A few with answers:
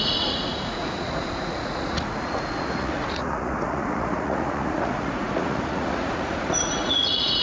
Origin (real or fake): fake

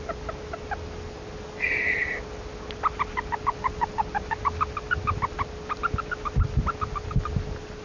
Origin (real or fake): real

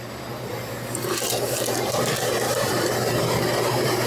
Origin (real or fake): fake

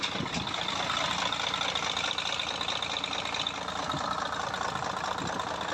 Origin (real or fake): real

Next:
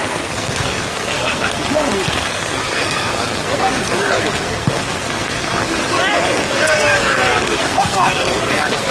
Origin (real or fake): fake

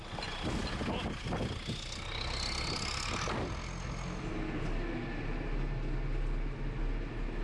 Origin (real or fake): real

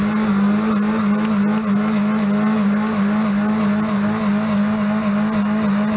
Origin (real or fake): real